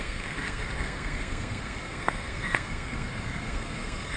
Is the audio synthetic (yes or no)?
yes